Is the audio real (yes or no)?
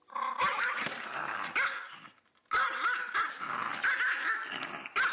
yes